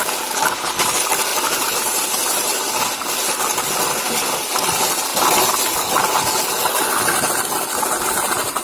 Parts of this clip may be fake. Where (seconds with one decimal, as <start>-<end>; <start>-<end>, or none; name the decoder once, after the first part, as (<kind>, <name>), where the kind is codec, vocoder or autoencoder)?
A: none